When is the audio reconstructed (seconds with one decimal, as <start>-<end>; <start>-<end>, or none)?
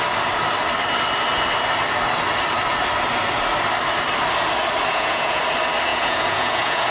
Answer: 4.9-5.4; 5.9-6.9